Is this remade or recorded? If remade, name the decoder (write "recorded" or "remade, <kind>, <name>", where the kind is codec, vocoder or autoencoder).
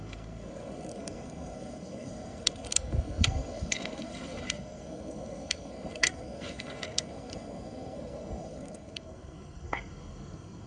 remade, codec, SNAC